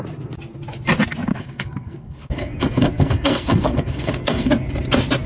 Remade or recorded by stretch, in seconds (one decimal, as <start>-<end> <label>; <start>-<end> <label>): 0.0-1.3 recorded; 1.3-4.5 remade; 4.5-5.3 recorded